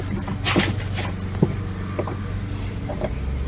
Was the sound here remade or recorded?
recorded